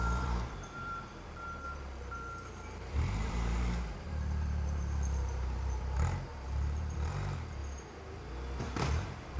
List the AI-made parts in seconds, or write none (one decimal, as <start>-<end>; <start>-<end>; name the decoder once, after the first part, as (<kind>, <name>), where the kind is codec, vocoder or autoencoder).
0.0-7.6 (vocoder, BigVGAN v2); 8.6-9.4